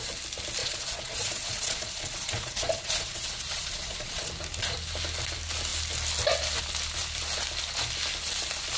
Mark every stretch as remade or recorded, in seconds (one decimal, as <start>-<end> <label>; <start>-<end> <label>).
0.0-0.6 recorded; 0.6-4.3 remade; 4.3-8.8 recorded